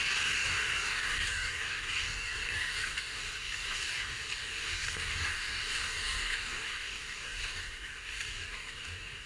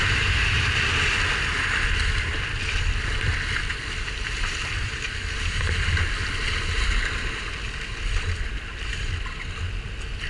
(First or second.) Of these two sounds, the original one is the second